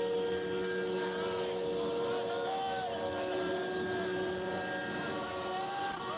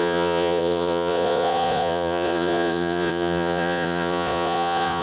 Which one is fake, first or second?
second